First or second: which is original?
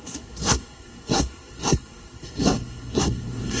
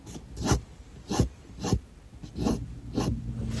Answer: second